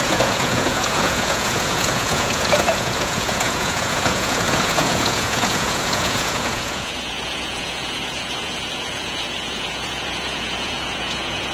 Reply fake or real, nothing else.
fake